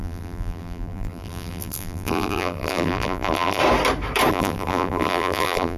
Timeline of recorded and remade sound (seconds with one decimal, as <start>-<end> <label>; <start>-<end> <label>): 0.0-3.6 remade; 3.6-4.3 recorded; 4.3-5.8 remade